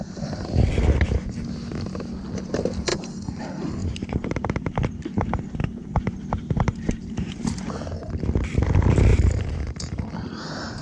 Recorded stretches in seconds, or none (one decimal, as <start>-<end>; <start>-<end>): 0.0-2.9; 3.4-3.8; 8.1-9.1